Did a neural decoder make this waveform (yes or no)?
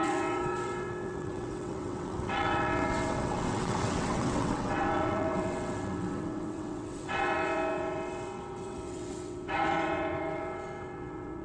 yes